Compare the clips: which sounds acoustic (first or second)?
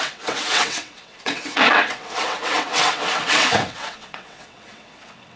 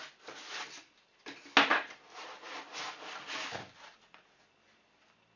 second